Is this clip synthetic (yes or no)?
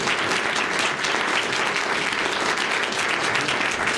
no